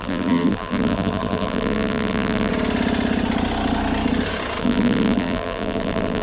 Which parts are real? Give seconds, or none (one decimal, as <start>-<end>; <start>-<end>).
2.5-4.6